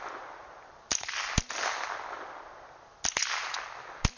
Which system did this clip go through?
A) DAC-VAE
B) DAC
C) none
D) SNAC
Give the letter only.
C